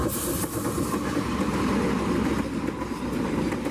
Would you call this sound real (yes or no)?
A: yes